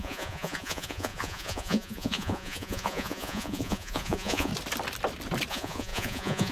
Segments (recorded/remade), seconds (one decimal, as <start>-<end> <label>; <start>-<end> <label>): 0.0-4.5 remade; 4.5-5.5 recorded; 5.5-6.5 remade